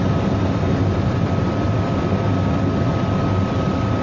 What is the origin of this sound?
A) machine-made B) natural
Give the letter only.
B